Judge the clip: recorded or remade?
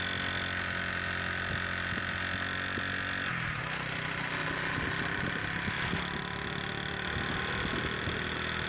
recorded